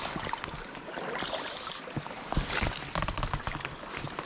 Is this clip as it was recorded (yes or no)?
yes